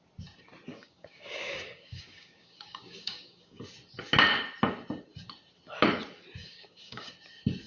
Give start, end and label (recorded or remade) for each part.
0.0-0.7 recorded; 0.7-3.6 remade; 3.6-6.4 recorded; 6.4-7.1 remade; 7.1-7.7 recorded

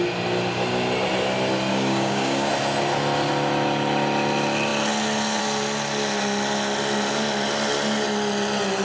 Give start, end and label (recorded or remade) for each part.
0.0-1.7 recorded; 1.7-2.5 remade; 2.5-8.8 recorded

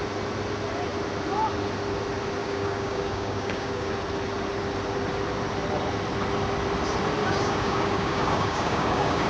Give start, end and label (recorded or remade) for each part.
0.0-2.4 recorded; 2.4-3.9 remade; 3.9-7.2 recorded; 7.2-9.3 remade

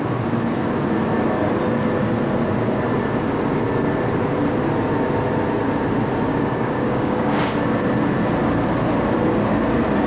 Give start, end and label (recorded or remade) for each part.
0.0-6.3 recorded; 6.3-7.5 remade; 7.5-10.1 recorded